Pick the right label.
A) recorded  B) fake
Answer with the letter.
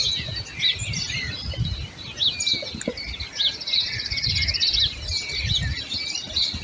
A